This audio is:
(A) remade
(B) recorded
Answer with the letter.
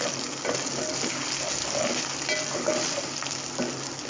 B